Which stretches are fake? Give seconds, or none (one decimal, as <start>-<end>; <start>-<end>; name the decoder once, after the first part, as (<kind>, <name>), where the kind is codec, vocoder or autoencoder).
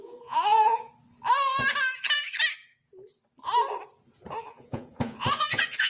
0.0-0.9 (vocoder, Vocos); 4.4-5.9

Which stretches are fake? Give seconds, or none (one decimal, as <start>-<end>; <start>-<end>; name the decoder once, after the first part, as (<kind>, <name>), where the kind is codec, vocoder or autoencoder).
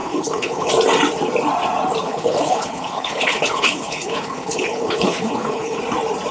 0.0-0.7 (codec, HILCodec); 2.0-5.8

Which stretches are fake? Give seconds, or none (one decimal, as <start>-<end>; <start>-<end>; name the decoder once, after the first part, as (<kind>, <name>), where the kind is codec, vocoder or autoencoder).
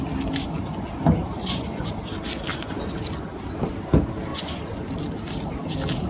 1.2-2.0 (vocoder, Vocos); 2.5-3.1; 4.3-4.9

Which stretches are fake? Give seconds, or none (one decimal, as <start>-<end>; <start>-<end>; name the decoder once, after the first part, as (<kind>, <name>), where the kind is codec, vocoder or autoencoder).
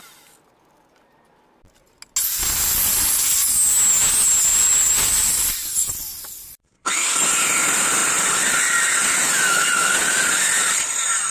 4.5-5.7 (vocoder, BigVGAN v2); 8.0-9.1